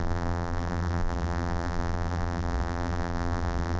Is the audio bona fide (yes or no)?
no